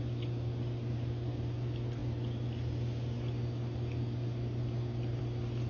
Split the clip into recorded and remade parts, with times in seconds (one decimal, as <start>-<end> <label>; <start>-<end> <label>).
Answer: 0.0-5.7 recorded